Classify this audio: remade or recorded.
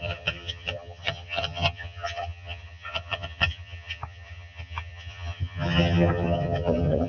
remade